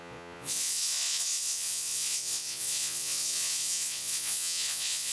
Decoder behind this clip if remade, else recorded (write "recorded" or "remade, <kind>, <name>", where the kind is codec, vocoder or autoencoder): remade, vocoder, Vocos